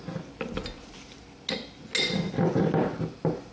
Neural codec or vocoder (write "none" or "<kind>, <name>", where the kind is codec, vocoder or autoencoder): none